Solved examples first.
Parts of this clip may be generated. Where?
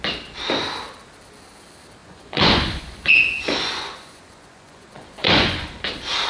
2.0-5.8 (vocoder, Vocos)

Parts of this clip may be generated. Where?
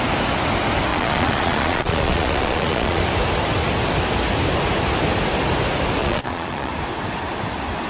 0.9-3.0 (vocoder, Vocos); 6.0-6.7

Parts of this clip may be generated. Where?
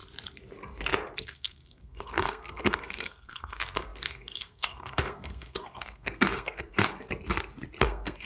1.2-6.9 (codec, SNAC); 7.8-8.3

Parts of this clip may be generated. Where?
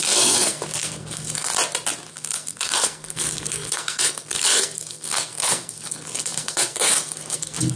0.0-1.5 (codec, SNAC); 2.1-7.8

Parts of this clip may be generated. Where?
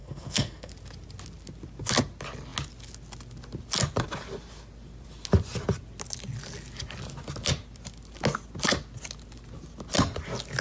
0.0-0.7 (codec, SNAC)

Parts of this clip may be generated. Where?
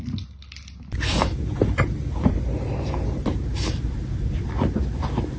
1.1-4.3 (vocoder, BigVGAN v2)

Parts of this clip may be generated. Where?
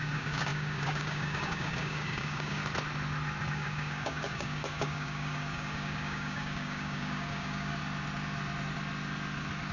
0.0-2.6 (codec, DAC); 3.5-7.7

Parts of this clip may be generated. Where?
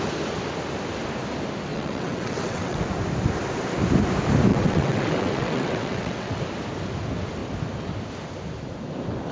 1.7-2.8 (vocoder, WaveNeXt); 4.5-6.4